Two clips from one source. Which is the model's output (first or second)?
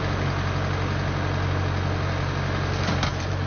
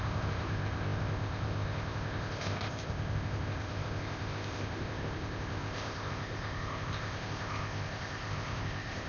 second